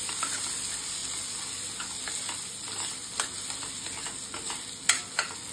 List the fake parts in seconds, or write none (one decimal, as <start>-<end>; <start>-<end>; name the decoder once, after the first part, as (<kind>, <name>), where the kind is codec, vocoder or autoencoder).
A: none